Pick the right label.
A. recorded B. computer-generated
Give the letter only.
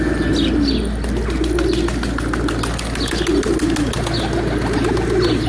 A